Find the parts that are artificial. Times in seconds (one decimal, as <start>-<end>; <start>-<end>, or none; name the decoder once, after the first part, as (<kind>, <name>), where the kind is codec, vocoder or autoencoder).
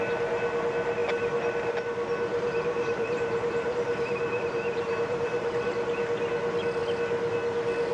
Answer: 2.3-5.7 (vocoder, BigVGAN v2)